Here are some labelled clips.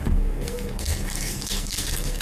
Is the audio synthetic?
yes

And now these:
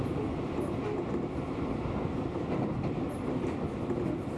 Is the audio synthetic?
no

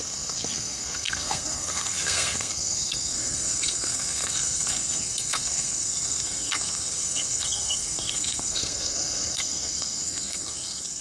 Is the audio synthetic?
yes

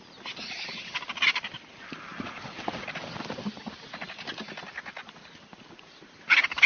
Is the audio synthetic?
no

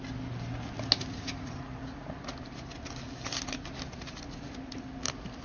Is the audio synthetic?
no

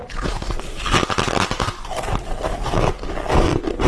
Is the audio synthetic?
no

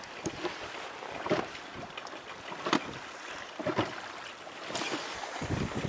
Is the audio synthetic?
no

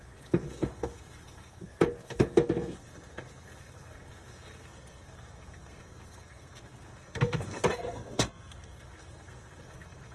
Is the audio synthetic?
yes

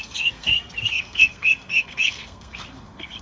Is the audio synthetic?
yes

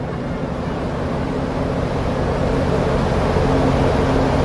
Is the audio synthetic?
no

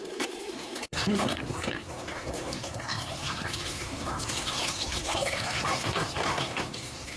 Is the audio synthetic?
yes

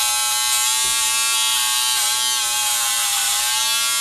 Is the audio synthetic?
no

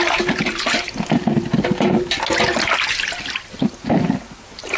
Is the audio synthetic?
no